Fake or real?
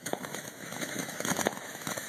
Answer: fake